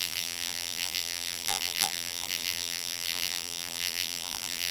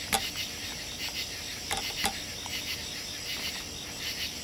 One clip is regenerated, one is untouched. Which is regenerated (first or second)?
first